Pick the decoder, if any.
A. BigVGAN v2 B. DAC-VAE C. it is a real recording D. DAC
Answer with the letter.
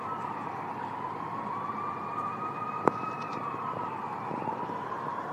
A